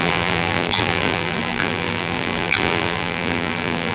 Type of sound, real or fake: fake